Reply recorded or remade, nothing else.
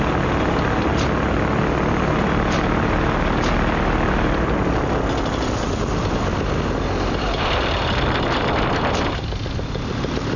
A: recorded